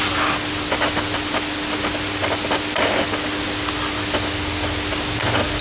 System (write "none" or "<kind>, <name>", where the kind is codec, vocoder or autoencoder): none